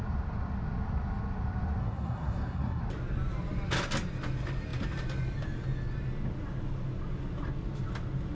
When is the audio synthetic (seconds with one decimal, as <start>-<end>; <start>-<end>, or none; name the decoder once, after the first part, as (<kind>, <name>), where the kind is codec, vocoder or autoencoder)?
1.8-2.8 (codec, SNAC)